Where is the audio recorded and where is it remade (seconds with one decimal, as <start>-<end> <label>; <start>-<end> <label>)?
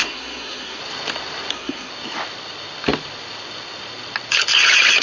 0.0-0.8 remade; 0.8-1.5 recorded; 1.5-1.9 remade; 1.9-5.0 recorded